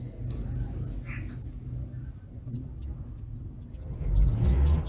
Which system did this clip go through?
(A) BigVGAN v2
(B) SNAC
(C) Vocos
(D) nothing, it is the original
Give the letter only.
D